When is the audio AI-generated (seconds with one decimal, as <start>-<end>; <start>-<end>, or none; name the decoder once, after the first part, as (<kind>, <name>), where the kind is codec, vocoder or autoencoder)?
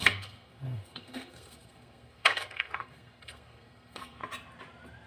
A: 0.0-4.2 (codec, SNAC)